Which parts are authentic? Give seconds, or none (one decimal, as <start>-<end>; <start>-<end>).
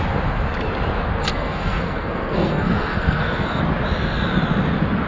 0.0-1.2; 3.6-5.1